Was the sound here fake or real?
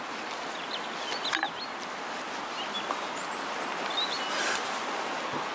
real